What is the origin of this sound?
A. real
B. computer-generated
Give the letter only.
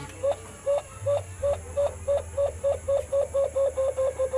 A